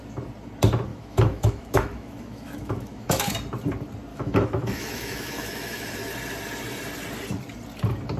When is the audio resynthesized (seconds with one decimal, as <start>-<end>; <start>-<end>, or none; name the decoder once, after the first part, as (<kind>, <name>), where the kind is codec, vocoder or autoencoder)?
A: 0.9-3.3 (autoencoder, DAC-VAE); 4.1-6.1